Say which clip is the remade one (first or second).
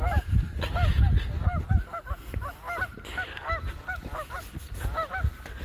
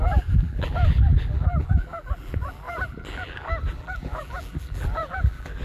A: second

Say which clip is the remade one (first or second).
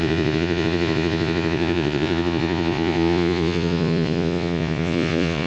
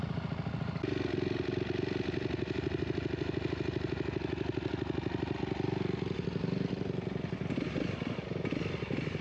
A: first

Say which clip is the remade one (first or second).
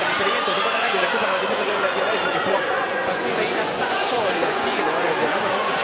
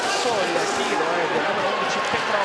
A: first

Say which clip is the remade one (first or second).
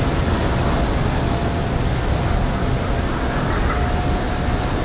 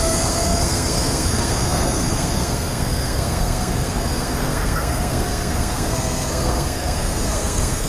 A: second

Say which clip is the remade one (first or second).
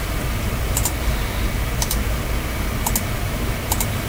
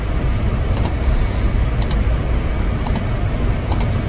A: second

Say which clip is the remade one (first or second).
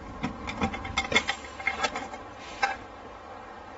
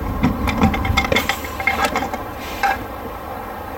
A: second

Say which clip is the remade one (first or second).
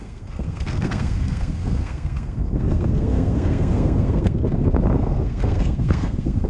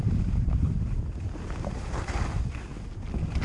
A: first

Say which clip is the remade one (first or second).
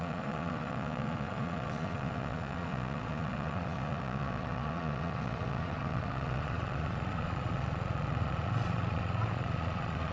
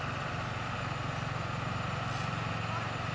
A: first